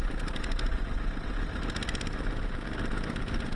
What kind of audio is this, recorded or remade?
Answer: recorded